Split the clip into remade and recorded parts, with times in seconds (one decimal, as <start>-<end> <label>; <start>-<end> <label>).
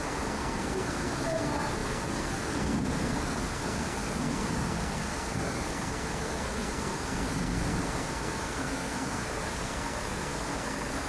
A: 0.0-11.1 remade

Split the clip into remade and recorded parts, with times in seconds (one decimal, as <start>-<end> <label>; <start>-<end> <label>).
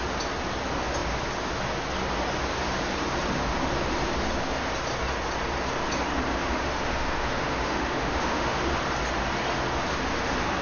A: 0.0-6.3 recorded; 6.3-8.6 remade; 8.6-10.6 recorded